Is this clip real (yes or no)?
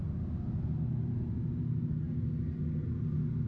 yes